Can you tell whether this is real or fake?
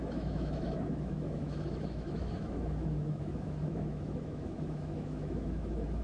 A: fake